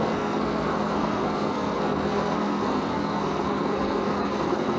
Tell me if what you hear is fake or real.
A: fake